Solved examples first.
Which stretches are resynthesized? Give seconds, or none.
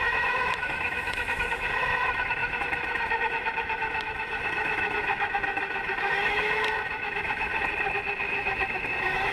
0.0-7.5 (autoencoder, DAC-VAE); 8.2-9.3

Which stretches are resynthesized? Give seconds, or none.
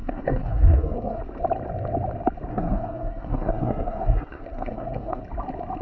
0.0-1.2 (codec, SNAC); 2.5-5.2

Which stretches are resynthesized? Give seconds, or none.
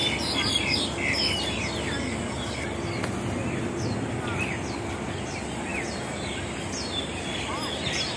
none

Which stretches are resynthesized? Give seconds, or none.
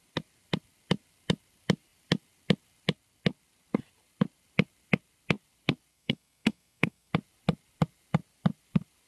5.9-7.1 (codec, SNAC)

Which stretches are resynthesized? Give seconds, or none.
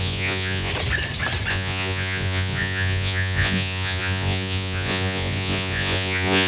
0.0-0.7 (vocoder, Vocos); 1.5-6.5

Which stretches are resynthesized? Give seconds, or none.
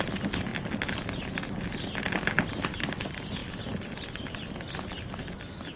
none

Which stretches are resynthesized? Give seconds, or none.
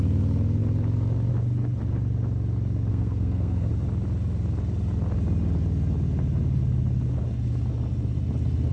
2.9-3.7 (codec, SNAC)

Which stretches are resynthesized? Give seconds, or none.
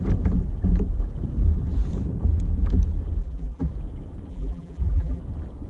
3.2-3.7 (vocoder, BigVGAN v2); 4.3-5.2